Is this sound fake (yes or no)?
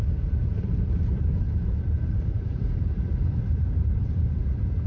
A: yes